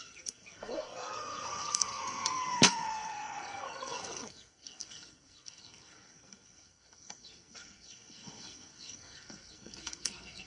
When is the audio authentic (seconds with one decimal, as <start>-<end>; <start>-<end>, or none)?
none